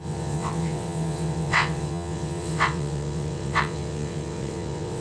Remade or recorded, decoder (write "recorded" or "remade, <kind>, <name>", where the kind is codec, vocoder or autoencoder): remade, vocoder, WaveNeXt